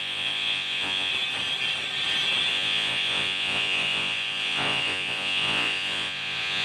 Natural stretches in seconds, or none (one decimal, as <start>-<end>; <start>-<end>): 1.1-2.5